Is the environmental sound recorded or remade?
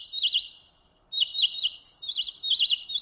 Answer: recorded